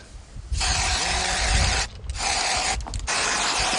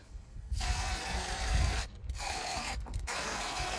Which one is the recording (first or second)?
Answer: first